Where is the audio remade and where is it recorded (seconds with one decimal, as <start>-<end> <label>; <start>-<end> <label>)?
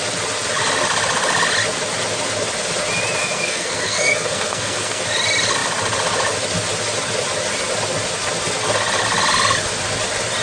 0.0-3.2 recorded; 3.2-5.0 remade; 5.0-10.4 recorded